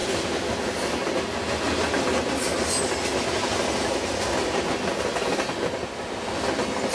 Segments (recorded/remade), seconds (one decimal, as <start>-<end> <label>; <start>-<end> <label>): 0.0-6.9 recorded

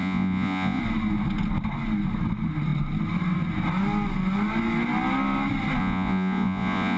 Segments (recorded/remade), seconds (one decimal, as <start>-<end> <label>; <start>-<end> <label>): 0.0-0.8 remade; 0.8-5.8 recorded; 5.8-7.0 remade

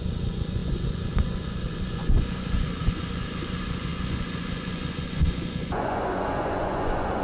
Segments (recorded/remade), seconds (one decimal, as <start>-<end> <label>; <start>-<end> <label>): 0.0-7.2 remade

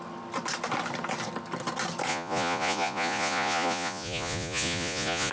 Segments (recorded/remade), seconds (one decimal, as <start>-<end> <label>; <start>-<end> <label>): 0.0-2.1 recorded; 2.1-5.3 remade

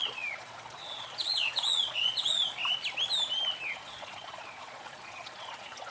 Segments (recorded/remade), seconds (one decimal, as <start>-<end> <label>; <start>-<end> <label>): 0.0-2.6 remade; 2.6-3.7 recorded; 3.7-5.9 remade

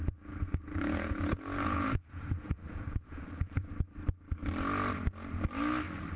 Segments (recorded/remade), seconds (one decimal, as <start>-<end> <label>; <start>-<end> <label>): 0.0-3.7 remade; 3.7-6.2 recorded

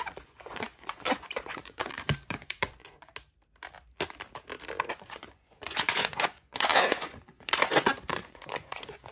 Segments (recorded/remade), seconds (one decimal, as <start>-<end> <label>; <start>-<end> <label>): 0.0-3.1 remade; 3.1-4.9 recorded; 4.9-9.1 remade

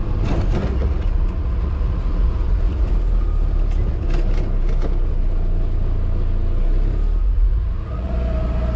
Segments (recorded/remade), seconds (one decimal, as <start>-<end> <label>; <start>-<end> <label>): 0.0-0.6 recorded; 0.6-2.9 remade; 2.9-7.2 recorded; 7.2-8.1 remade; 8.1-8.8 recorded